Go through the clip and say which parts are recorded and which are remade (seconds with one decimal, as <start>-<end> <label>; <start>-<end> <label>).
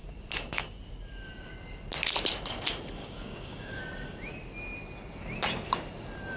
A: 0.0-3.0 recorded; 3.0-3.8 remade; 3.8-6.4 recorded